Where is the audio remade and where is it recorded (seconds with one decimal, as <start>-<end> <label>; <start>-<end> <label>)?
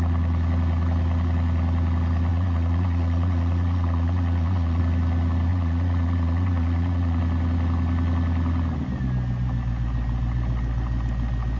0.0-2.3 recorded; 2.3-4.8 remade; 4.8-5.5 recorded; 5.5-7.2 remade; 7.2-11.6 recorded